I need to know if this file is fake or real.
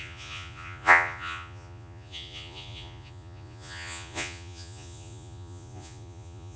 fake